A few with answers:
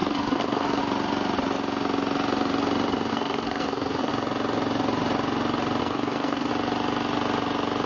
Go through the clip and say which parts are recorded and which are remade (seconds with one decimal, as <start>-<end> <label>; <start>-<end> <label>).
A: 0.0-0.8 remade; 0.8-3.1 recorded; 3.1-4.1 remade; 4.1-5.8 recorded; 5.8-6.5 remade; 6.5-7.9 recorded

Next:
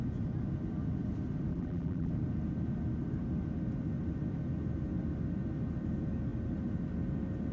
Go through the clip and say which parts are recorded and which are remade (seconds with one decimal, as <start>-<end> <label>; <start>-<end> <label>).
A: 0.0-1.5 recorded; 1.5-2.1 remade; 2.1-7.5 recorded

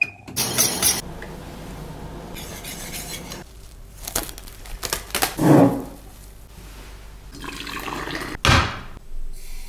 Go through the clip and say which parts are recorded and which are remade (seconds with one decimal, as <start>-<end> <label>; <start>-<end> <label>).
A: 0.0-2.5 recorded; 2.5-4.2 remade; 4.2-9.7 recorded